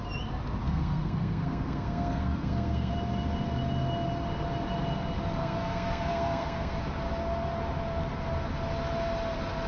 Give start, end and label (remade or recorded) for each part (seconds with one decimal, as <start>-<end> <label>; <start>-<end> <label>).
0.0-0.6 recorded; 0.6-2.9 remade; 2.9-5.4 recorded; 5.4-6.8 remade; 6.8-9.7 recorded